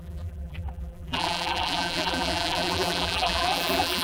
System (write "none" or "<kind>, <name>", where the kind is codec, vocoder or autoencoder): vocoder, BigVGAN v2